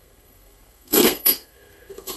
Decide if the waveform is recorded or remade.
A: remade